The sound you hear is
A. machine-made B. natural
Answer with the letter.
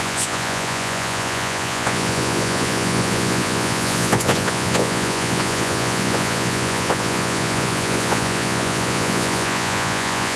A